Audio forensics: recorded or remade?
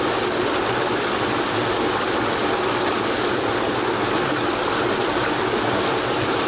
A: recorded